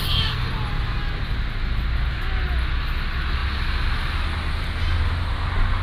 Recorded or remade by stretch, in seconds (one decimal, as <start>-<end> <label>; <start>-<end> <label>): 0.0-0.5 remade; 0.5-5.8 recorded

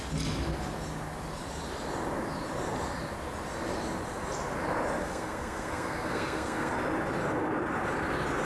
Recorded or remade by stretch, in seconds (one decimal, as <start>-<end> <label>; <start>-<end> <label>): 0.0-5.0 recorded; 5.0-6.7 remade; 6.7-8.4 recorded

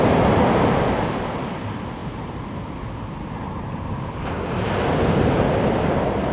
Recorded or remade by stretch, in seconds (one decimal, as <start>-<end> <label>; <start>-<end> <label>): 0.0-6.3 recorded

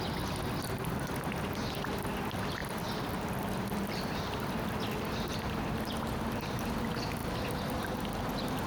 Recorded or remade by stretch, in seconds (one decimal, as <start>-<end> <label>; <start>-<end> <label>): 0.0-2.6 recorded; 2.6-5.5 remade; 5.5-8.7 recorded